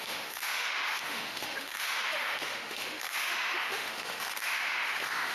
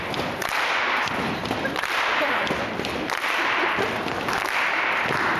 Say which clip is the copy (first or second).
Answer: first